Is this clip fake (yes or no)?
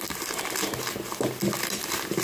no